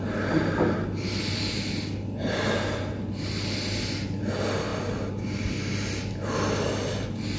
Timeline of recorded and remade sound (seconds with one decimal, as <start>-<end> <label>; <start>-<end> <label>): 0.0-7.4 recorded

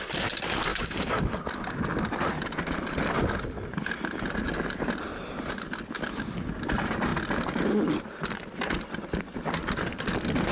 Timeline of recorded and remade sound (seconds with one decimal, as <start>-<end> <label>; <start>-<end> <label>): 0.0-0.7 recorded; 0.7-1.4 remade; 1.4-10.5 recorded